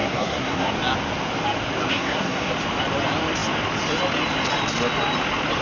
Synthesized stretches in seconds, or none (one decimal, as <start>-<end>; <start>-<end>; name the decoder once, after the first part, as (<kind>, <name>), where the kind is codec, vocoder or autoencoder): 0.0-0.7 (codec, SNAC); 1.9-2.5